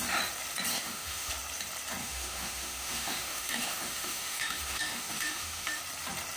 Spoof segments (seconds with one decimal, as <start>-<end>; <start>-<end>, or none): 0.7-1.3; 2.0-5.8